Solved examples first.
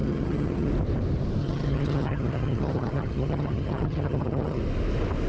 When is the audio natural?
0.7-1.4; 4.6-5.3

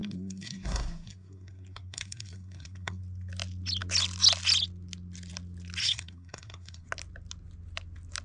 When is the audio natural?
3.0-5.8; 6.9-8.2

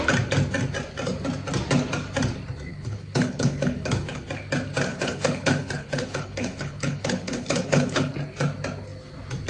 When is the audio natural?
0.0-2.7; 4.2-4.9; 8.1-9.5

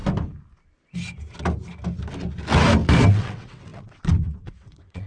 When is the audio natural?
0.0-3.1

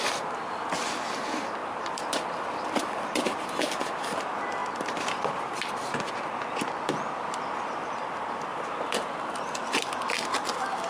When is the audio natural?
0.0-1.6; 2.1-10.9

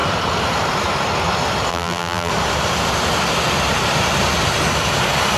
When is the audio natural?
0.0-1.7; 2.3-5.4

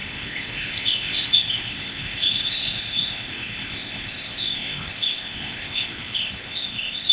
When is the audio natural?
none